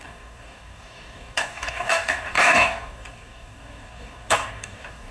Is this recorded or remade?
remade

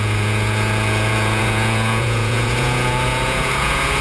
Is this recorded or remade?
remade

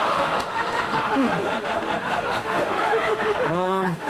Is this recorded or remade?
remade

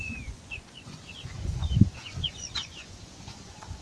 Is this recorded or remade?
remade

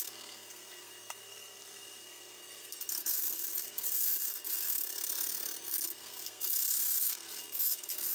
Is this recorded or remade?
remade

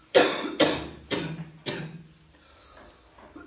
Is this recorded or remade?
recorded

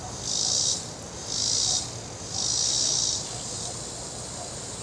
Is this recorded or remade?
recorded